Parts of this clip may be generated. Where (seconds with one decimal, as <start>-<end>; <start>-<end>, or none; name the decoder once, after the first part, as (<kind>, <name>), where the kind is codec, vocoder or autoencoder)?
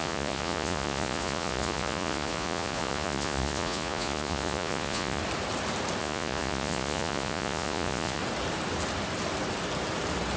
0.0-5.2 (vocoder, Vocos); 6.0-8.2